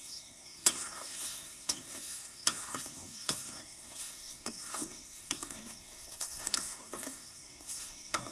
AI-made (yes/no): yes